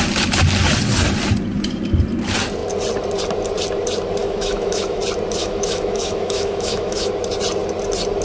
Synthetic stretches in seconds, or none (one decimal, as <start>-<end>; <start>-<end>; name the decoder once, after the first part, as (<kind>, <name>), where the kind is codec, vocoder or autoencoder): 4.2-5.0 (autoencoder, DAC-VAE); 5.4-7.1

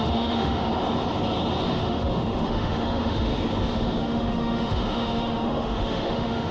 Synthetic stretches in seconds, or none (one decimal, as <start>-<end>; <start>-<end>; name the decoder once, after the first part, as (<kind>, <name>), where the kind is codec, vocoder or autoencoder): 0.0-0.7 (autoencoder, DAC-VAE); 1.7-3.3; 4.0-6.5

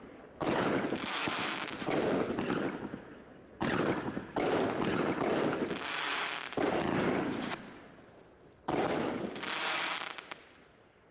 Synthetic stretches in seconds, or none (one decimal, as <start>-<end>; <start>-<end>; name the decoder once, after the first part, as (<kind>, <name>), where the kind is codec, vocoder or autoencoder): 1.1-1.7 (autoencoder, DAC-VAE)

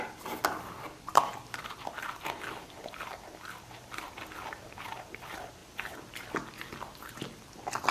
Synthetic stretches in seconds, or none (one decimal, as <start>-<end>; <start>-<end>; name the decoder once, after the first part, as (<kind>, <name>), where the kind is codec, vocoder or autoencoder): none

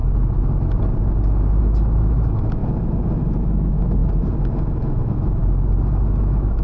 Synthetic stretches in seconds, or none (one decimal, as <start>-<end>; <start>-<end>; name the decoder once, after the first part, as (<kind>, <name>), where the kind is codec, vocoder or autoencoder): 1.6-2.6 (autoencoder, DAC-VAE); 3.2-4.0; 4.7-5.4; 5.9-6.6

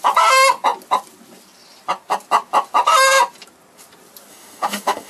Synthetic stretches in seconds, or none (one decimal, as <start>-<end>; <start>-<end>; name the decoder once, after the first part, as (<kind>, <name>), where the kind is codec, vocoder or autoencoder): 4.3-5.1 (autoencoder, DAC-VAE)